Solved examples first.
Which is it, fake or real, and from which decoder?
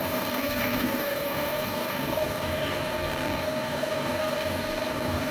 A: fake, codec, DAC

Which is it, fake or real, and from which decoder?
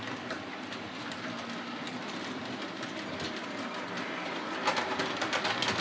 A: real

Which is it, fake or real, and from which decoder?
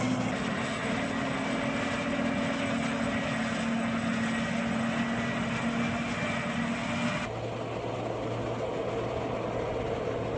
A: real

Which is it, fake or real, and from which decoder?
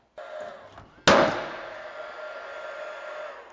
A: real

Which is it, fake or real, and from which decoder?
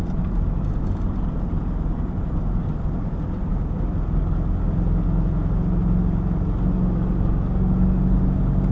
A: real